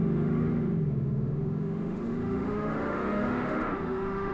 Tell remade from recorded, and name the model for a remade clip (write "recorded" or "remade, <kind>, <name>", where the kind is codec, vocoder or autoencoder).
remade, autoencoder, DAC-VAE